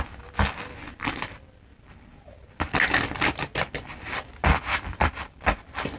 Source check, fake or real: real